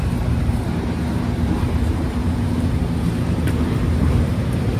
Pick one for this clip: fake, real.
fake